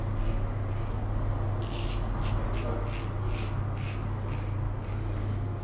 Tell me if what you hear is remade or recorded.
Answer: recorded